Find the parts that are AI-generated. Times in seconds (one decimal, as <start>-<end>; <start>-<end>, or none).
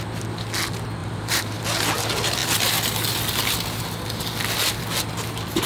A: 1.0-1.6